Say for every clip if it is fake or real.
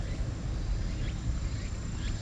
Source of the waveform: real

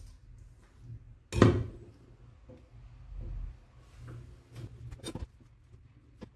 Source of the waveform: real